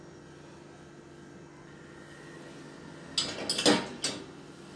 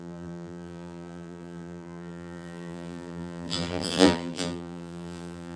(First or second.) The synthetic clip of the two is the second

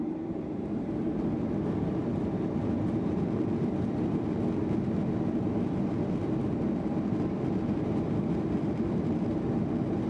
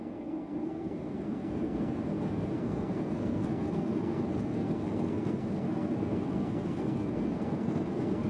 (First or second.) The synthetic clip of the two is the second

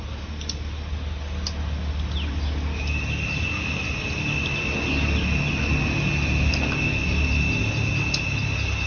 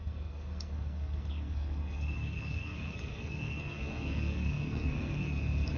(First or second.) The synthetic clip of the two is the second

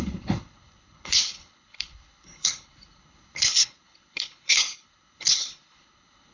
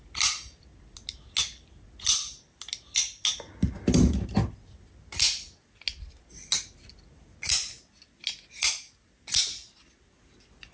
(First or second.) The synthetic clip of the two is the first